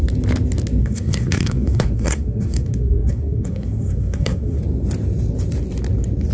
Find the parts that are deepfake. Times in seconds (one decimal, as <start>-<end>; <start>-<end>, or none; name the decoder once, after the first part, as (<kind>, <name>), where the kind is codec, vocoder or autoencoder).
0.8-4.6 (codec, SNAC)